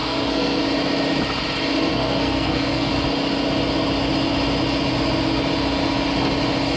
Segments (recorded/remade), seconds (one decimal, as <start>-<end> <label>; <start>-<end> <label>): 0.0-0.6 remade; 0.6-1.9 recorded; 1.9-2.9 remade; 2.9-6.8 recorded

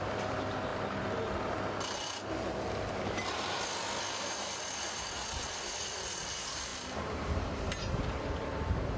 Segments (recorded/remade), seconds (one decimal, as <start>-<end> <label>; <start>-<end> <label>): 0.0-6.7 recorded; 6.7-8.0 remade; 8.0-9.0 recorded

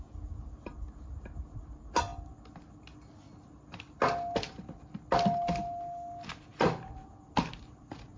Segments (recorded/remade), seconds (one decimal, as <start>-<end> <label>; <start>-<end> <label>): 0.0-8.2 recorded

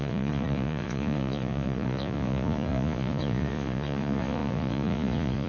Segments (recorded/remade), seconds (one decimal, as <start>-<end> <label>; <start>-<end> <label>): 0.0-5.5 remade

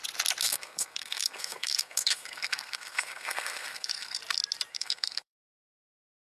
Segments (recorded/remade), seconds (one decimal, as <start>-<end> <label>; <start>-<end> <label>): 0.0-0.4 recorded; 0.4-4.2 remade; 4.2-4.7 recorded; 4.7-6.4 remade

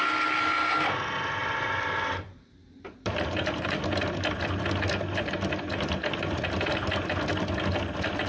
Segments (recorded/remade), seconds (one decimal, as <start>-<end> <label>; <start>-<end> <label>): 0.0-1.4 recorded; 1.4-3.8 remade; 3.8-8.3 recorded

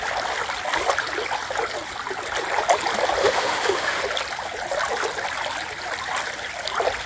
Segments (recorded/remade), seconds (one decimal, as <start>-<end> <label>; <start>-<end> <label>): 0.0-3.2 recorded; 3.2-4.0 remade; 4.0-7.1 recorded